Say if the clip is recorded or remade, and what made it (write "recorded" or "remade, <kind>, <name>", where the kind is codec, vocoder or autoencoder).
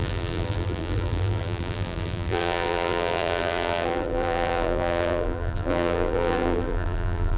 remade, vocoder, BigVGAN v2